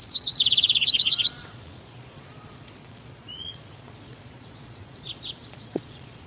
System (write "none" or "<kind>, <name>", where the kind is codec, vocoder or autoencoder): vocoder, Vocos